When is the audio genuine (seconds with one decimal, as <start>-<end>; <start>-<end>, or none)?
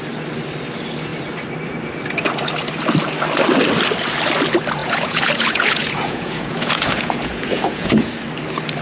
0.0-4.8; 8.1-8.8